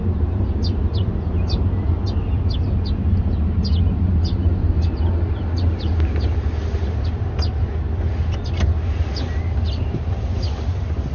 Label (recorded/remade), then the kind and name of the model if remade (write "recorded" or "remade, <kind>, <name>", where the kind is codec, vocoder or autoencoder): recorded